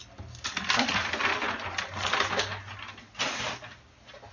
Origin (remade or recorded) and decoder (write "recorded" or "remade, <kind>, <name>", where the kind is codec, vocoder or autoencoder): recorded